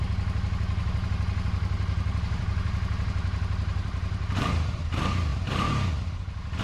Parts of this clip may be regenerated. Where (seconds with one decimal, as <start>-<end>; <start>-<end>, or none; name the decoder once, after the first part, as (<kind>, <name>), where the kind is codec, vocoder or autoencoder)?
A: 0.8-4.8 (vocoder, BigVGAN v2); 5.3-5.9